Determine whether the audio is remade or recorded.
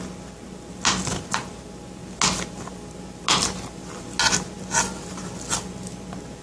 recorded